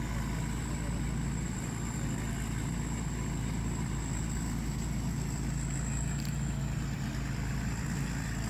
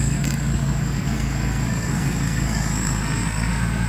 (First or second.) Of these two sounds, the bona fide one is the first